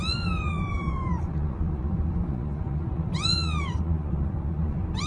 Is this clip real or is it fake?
fake